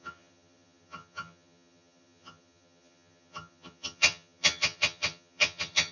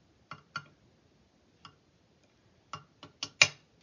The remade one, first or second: first